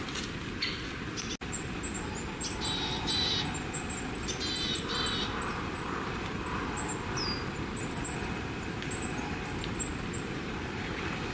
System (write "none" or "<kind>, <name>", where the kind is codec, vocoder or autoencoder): none